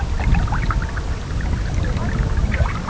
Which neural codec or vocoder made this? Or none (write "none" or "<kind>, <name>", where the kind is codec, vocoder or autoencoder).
none